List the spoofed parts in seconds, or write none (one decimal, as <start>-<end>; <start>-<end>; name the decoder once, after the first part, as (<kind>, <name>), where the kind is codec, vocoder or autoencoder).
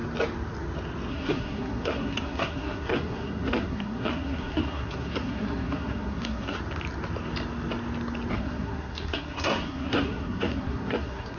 1.1-6.6 (codec, SNAC); 8.3-11.4